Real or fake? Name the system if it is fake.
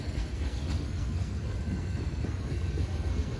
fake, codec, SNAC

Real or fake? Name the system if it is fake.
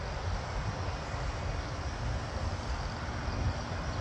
real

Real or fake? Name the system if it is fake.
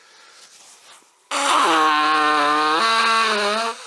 real